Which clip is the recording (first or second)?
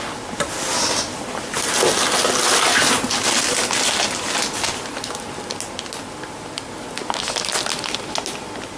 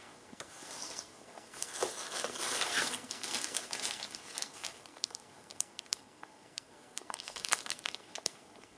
first